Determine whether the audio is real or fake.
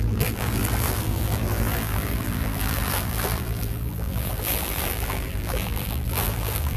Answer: fake